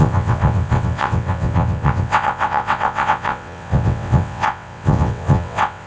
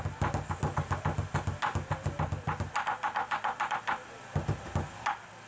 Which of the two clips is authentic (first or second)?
second